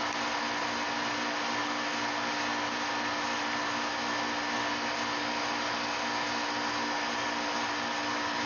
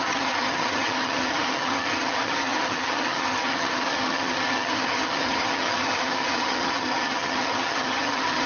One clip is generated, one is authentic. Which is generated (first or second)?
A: second